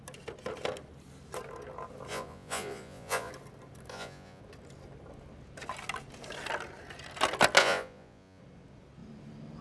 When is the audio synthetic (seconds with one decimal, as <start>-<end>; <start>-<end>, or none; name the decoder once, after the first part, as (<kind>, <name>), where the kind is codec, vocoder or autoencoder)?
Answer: 2.1-3.3 (vocoder, Vocos); 3.9-4.4; 7.6-8.4